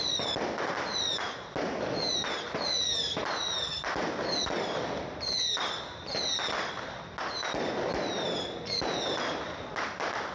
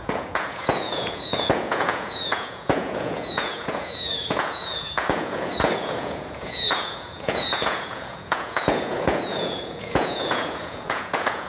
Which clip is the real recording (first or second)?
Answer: first